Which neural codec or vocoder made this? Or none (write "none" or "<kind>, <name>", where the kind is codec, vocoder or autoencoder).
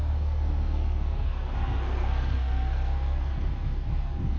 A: codec, SNAC